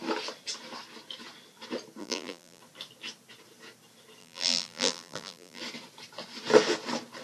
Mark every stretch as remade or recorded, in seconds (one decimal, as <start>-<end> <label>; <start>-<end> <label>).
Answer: 0.0-2.0 recorded; 2.0-2.6 remade; 2.6-4.2 recorded; 4.2-5.6 remade; 5.6-7.2 recorded

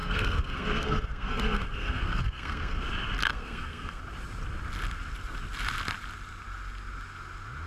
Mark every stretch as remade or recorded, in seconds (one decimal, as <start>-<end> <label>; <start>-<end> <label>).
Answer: 0.0-2.8 remade; 2.8-3.2 recorded; 3.2-4.0 remade; 4.0-7.7 recorded

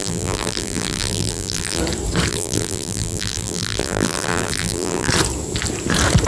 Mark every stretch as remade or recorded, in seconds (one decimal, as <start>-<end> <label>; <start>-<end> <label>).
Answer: 0.0-1.8 remade; 1.8-2.3 recorded; 2.3-5.1 remade; 5.1-6.3 recorded

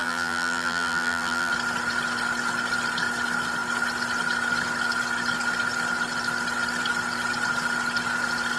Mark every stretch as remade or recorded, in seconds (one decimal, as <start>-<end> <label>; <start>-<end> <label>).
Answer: 0.0-1.5 remade; 1.5-8.6 recorded

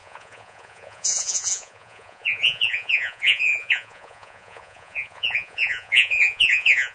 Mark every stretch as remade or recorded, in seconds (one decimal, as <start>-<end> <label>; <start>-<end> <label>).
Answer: 0.0-6.9 remade

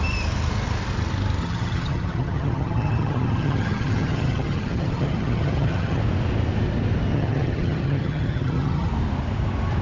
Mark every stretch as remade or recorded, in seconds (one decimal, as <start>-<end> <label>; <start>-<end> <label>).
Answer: 0.0-1.4 recorded; 1.4-6.0 remade; 6.0-7.1 recorded; 7.1-8.9 remade; 8.9-9.8 recorded

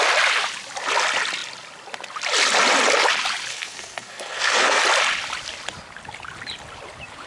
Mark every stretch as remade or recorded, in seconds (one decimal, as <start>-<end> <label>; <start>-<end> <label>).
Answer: 0.0-3.5 recorded; 3.5-4.8 remade; 4.8-7.3 recorded